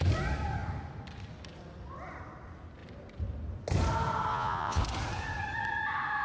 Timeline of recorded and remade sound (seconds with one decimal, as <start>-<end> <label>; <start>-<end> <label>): 0.0-4.3 recorded; 4.3-4.8 remade; 4.8-6.2 recorded